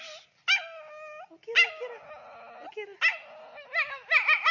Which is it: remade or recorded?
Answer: recorded